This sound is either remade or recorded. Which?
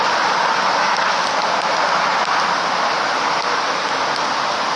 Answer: recorded